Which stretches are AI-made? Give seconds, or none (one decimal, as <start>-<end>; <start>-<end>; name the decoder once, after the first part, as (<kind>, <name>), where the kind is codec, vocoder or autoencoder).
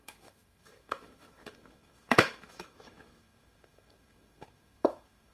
0.0-5.3 (autoencoder, DAC-VAE)